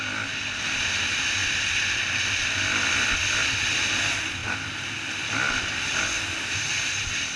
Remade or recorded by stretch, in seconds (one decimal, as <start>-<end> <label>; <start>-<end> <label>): 0.0-7.4 recorded